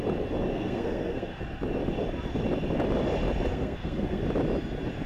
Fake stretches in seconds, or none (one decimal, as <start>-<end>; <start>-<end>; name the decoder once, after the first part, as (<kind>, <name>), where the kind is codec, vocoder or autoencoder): 0.5-1.4 (codec, SNAC); 3.5-4.2

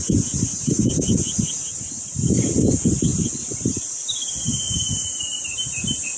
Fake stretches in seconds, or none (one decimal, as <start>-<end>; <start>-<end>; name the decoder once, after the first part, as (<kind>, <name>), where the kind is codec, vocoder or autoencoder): none

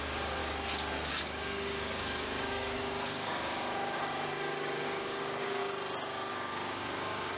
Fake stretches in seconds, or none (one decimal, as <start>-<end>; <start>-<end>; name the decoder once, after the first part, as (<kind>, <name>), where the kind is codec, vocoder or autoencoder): 0.0-0.4 (codec, DAC); 1.1-5.6; 6.3-7.4

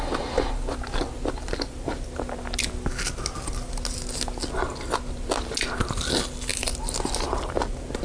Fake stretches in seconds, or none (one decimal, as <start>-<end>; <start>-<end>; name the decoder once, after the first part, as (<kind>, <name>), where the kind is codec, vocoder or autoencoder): none

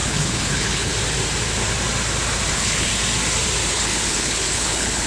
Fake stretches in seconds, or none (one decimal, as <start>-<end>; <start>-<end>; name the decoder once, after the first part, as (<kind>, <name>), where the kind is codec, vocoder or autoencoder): 0.0-0.9 (codec, HILCodec); 2.5-2.9; 3.7-5.1